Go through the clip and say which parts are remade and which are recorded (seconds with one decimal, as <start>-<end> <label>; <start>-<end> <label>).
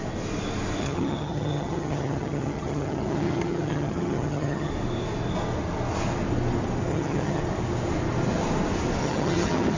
0.0-0.8 recorded; 0.8-4.7 remade; 4.7-6.9 recorded; 6.9-7.4 remade; 7.4-9.0 recorded; 9.0-9.8 remade